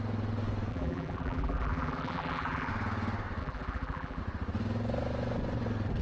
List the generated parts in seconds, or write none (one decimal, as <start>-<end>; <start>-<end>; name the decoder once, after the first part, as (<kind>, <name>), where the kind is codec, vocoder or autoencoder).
0.7-2.7 (vocoder, BigVGAN v2); 3.4-4.2